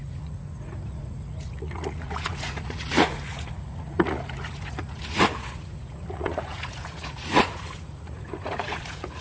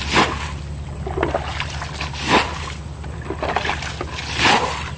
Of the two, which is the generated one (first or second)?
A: first